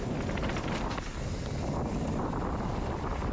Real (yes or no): yes